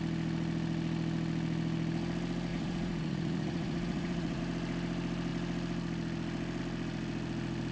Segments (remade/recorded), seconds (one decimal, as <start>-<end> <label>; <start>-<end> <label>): 0.0-2.5 recorded; 2.5-4.4 remade; 4.4-7.7 recorded